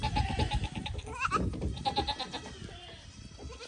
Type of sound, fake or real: real